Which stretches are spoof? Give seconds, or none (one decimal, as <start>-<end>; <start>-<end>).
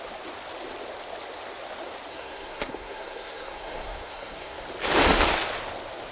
2.1-4.6